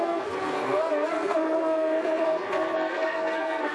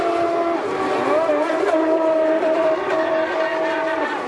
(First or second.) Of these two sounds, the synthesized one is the first